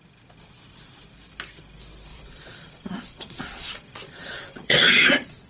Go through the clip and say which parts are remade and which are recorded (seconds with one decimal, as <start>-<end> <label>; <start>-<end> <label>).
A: 0.0-2.1 recorded; 2.1-5.5 remade